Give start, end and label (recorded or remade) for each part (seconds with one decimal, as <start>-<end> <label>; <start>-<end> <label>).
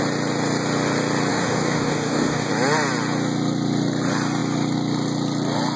0.0-1.3 recorded; 1.3-2.5 remade; 2.5-5.8 recorded